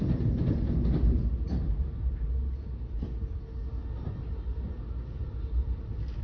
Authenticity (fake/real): real